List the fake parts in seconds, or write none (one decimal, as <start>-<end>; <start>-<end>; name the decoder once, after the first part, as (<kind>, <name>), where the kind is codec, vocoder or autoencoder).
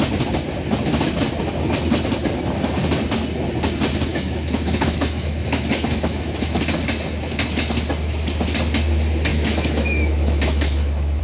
4.1-6.6 (autoencoder, DAC-VAE); 9.3-11.2